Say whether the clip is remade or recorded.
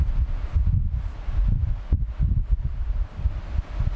recorded